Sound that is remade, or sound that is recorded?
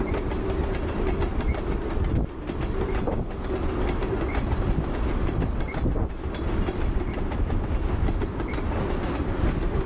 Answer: recorded